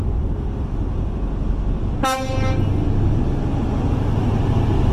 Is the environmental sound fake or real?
real